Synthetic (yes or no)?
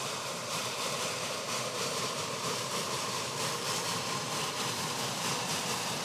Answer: yes